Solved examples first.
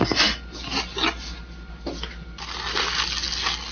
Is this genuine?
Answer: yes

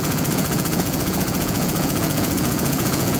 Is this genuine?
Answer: no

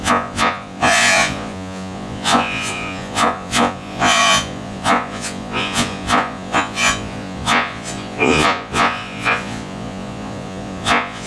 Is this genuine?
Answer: no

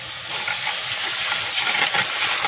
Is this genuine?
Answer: yes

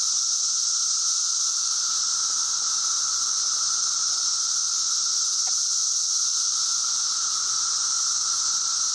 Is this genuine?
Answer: yes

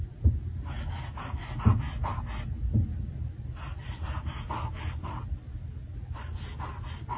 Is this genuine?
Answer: yes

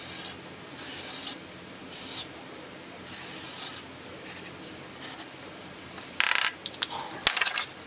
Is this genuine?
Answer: yes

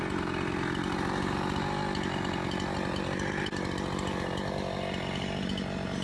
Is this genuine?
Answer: yes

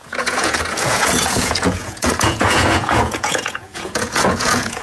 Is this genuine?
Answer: no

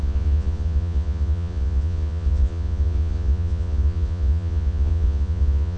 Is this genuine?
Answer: no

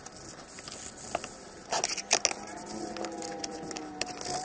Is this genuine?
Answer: yes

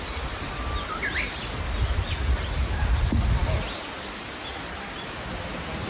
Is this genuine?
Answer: yes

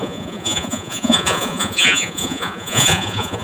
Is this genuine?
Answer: no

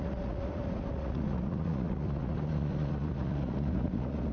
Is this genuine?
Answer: no